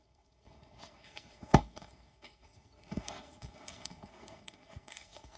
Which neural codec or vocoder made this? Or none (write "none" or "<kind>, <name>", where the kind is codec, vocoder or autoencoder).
codec, SNAC